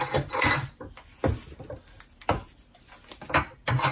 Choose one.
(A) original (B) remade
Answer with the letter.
A